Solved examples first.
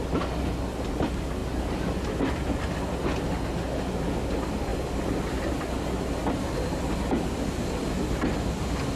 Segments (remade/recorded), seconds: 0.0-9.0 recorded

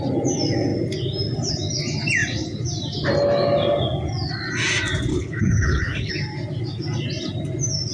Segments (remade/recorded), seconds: 0.0-5.1 recorded; 5.1-6.1 remade; 6.1-7.9 recorded

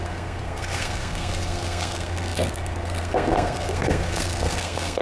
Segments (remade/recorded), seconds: 0.0-5.0 remade